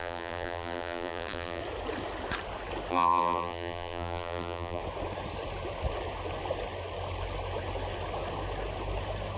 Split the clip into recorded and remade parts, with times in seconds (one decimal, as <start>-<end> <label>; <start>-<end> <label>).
0.0-1.6 remade; 1.6-2.9 recorded; 2.9-4.8 remade; 4.8-9.4 recorded